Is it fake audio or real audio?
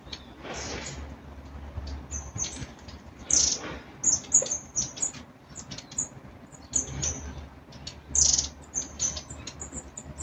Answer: real